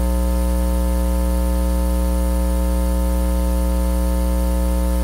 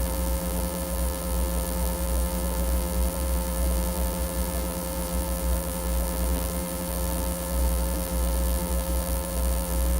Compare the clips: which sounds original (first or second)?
first